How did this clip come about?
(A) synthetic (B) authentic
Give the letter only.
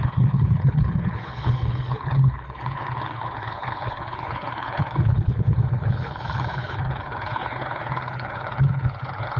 A